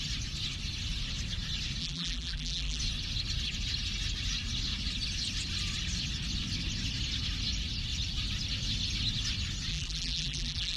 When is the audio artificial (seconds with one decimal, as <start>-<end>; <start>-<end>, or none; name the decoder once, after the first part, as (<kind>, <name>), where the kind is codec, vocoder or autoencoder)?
1.8-2.8 (vocoder, BigVGAN v2); 9.7-10.8